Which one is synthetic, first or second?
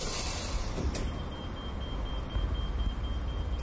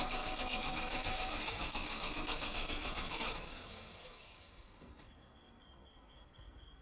second